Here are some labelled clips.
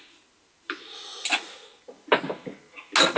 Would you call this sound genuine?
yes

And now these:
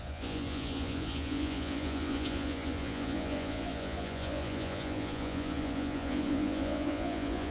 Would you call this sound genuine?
no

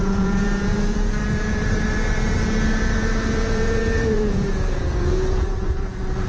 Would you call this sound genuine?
no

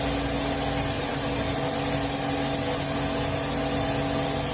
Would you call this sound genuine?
yes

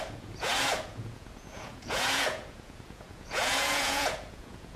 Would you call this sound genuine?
no